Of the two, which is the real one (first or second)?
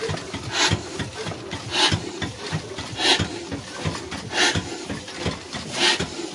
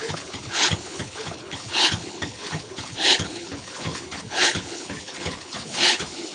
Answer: first